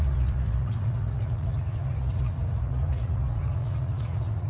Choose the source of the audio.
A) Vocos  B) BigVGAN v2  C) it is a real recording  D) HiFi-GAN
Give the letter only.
A